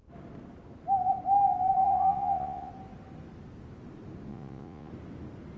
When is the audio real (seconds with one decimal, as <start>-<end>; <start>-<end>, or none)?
0.0-1.8; 2.7-4.3; 4.9-5.6